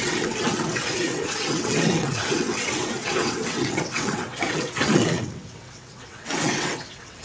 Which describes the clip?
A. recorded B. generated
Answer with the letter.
B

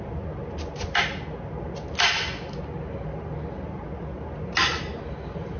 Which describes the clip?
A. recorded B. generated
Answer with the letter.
A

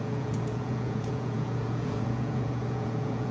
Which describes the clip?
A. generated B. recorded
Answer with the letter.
A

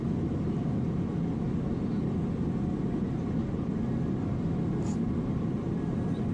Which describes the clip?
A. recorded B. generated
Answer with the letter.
A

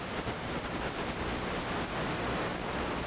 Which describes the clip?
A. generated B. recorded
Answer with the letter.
B